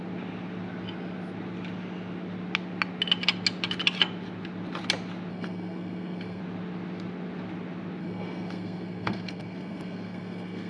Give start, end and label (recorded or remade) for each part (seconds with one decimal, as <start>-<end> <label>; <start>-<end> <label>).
0.0-5.3 recorded; 5.3-6.4 remade; 6.4-8.0 recorded; 8.0-10.7 remade